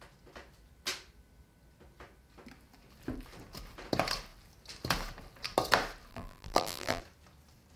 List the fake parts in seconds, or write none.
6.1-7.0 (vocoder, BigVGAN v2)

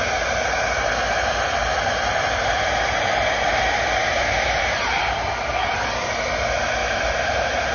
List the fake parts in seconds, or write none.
4.0-5.5 (vocoder, BigVGAN v2); 6.8-7.7

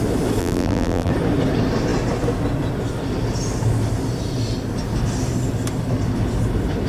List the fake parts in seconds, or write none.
0.4-1.1 (vocoder, BigVGAN v2)

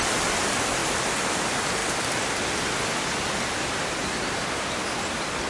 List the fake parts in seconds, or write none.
0.0-0.8 (vocoder, BigVGAN v2); 1.4-1.8; 5.1-5.5

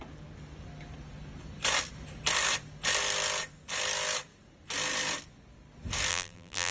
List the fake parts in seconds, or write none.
6.1-6.7 (vocoder, BigVGAN v2)

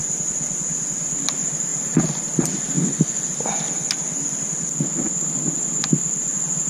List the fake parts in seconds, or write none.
none